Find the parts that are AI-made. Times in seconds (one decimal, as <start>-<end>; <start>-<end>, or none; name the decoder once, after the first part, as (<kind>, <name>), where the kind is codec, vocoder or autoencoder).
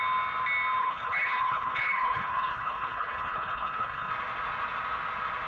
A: 0.8-4.1 (codec, HILCodec)